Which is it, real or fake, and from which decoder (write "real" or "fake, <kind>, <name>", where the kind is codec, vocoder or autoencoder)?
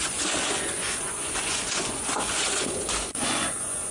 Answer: fake, vocoder, Vocos